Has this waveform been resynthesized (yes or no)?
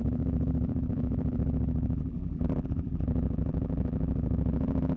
yes